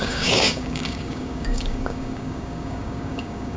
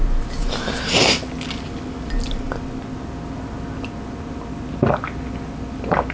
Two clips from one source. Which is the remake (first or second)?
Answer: first